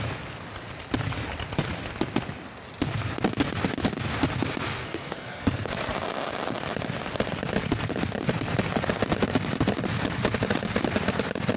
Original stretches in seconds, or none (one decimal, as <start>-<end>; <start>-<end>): 0.0-4.8; 5.7-11.6